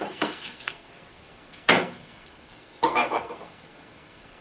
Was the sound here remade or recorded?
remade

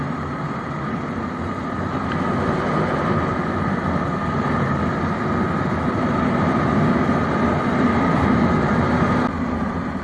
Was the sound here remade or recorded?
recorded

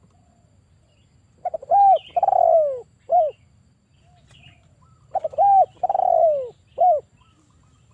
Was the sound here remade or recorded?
recorded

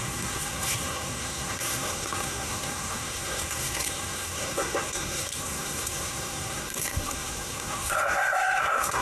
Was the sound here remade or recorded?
remade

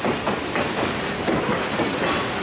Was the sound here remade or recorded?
recorded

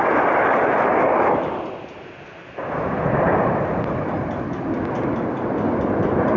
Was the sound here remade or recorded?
recorded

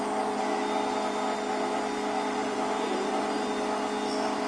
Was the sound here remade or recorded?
recorded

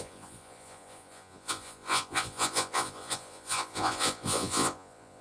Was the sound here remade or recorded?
remade